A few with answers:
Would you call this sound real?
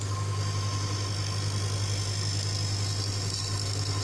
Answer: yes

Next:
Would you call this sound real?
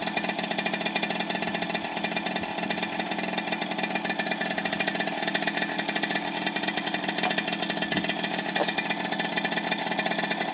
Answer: yes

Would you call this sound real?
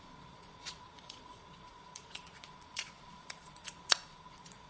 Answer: no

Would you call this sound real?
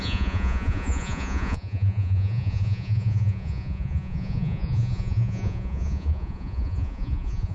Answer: no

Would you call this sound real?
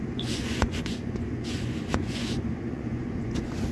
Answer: no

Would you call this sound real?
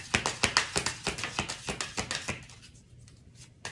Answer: yes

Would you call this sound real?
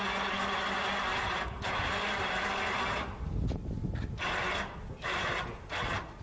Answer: yes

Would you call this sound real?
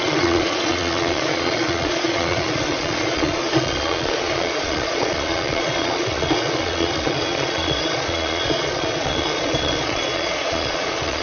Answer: no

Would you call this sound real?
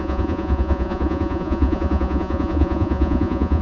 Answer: no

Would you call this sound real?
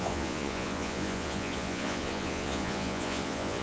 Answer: no